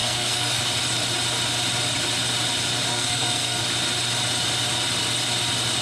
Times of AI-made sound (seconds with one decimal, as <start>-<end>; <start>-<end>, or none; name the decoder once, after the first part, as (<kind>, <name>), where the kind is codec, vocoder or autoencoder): 0.0-0.6 (codec, SNAC); 2.9-3.6